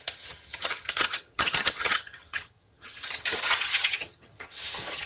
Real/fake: fake